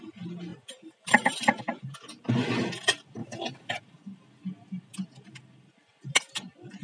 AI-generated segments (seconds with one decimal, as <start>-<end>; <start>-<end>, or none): 0.5-1.6; 3.2-3.7